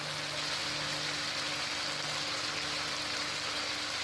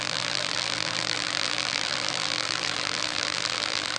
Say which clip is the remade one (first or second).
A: second